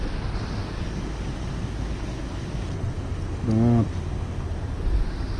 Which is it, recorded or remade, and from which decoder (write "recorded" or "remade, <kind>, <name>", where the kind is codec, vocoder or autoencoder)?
recorded